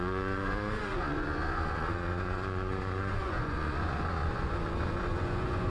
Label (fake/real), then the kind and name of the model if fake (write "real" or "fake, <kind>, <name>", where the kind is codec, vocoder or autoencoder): fake, vocoder, Vocos